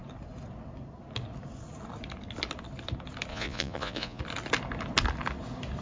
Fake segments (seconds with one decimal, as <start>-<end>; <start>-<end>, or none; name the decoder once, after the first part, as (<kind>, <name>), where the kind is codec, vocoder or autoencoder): 3.3-4.2 (vocoder, Vocos)